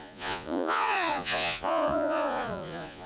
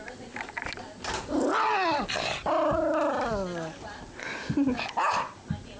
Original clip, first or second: second